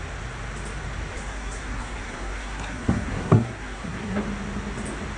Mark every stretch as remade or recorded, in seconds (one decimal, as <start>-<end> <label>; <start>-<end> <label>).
0.0-1.1 recorded; 1.1-4.2 remade; 4.2-5.2 recorded